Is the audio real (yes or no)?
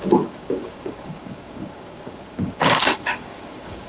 no